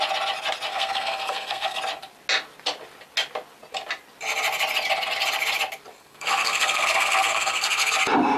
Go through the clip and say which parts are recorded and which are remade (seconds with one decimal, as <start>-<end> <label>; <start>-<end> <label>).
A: 0.0-0.7 recorded; 0.7-1.8 remade; 1.8-6.0 recorded; 6.0-7.9 remade; 7.9-8.4 recorded

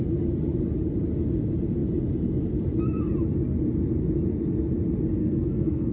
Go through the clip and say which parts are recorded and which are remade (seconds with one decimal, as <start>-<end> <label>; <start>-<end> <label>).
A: 0.0-5.2 recorded; 5.2-5.9 remade

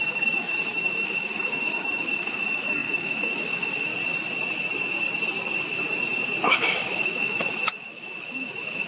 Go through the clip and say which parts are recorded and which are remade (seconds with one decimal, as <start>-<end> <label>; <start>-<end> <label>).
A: 0.0-3.9 remade; 3.9-6.5 recorded; 6.5-8.9 remade

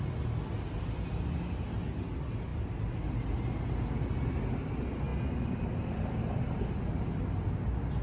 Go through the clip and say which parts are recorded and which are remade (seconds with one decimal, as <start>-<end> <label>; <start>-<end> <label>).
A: 0.0-8.0 recorded

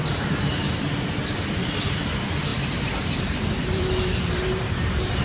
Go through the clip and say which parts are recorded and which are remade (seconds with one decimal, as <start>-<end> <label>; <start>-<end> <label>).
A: 0.0-5.2 remade

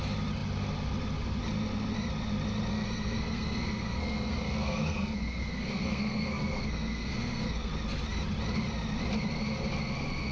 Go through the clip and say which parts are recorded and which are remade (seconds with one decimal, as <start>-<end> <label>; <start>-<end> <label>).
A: 0.0-2.7 recorded; 2.7-7.7 remade; 7.7-10.3 recorded

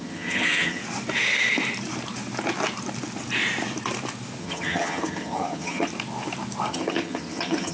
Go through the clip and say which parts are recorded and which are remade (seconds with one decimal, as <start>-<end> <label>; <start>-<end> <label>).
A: 0.0-0.8 remade; 0.8-4.4 recorded; 4.4-5.9 remade; 5.9-6.7 recorded; 6.7-7.7 remade